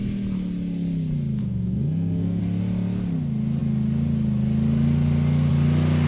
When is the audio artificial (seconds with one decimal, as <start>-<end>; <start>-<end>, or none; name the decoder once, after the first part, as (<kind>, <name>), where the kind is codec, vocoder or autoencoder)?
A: 1.4-2.4 (codec, SNAC)